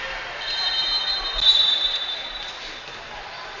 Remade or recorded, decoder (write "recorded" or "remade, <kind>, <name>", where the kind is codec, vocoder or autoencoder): recorded